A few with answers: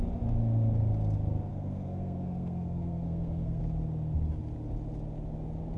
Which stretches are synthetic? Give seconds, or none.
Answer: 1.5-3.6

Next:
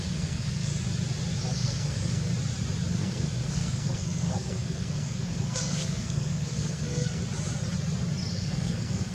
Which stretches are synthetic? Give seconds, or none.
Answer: 0.0-0.7; 1.5-2.3; 2.9-7.2; 8.3-9.1

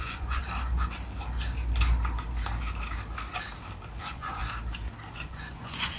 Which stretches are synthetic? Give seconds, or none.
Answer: 0.0-0.4; 4.0-4.4; 5.1-6.0

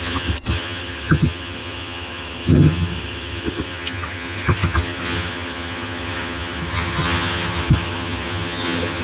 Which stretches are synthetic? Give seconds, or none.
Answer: 0.0-9.0

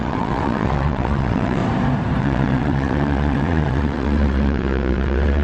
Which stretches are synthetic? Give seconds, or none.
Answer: 0.0-1.6; 2.2-5.4

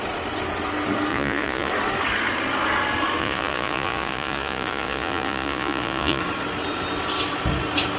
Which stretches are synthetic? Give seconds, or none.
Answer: 1.1-1.7; 3.2-6.2

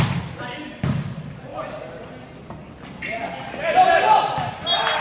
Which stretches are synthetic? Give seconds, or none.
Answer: none